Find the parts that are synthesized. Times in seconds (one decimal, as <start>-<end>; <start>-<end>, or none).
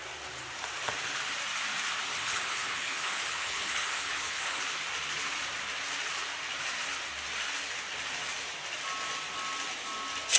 2.1-4.6